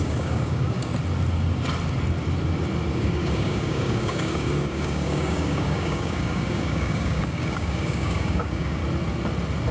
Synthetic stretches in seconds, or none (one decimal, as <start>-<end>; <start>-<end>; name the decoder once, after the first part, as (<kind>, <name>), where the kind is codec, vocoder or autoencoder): 0.0-0.9 (codec, DAC); 2.9-8.8